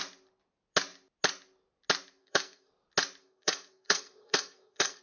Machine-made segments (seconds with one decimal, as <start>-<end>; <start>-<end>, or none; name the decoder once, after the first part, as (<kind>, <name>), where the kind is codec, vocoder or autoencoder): 2.2-2.7 (codec, SNAC); 3.2-5.0